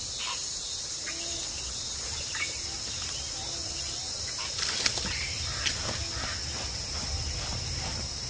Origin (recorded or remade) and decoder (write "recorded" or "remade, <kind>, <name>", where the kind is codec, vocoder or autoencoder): recorded